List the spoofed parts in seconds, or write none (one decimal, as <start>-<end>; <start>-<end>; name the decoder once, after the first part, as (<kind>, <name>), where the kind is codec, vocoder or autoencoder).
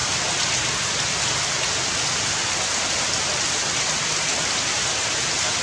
none